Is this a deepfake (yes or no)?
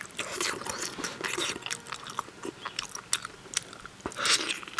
no